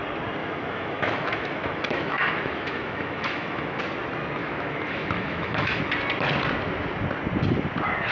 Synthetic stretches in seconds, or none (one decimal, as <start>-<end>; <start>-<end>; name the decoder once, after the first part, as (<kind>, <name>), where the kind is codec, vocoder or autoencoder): 0.4-3.8 (autoencoder, DAC-VAE); 4.4-5.8